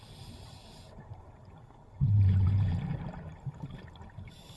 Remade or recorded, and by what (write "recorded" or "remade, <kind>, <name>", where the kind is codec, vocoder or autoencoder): remade, vocoder, BigVGAN v2